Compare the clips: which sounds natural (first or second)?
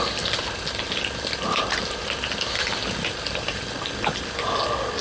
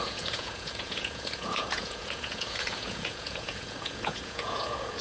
first